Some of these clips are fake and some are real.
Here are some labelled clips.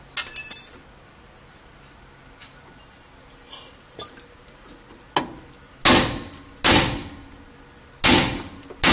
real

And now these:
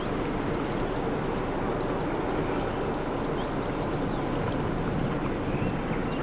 real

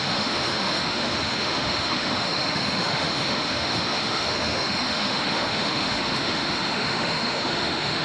fake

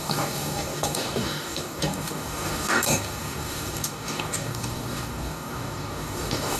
fake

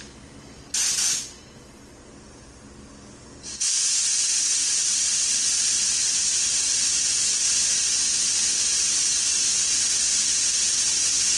real